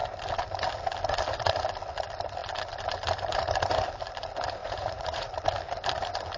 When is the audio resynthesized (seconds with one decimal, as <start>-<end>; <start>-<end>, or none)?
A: 4.6-5.3